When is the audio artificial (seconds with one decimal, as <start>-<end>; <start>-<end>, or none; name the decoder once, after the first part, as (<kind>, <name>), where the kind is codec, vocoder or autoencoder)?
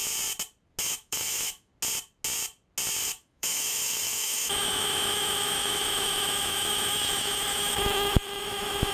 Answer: 0.8-1.7 (autoencoder, DAC-VAE); 3.0-8.9